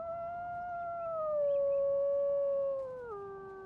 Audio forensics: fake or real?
real